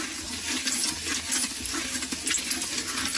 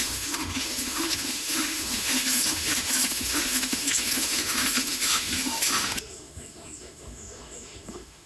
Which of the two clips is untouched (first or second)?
first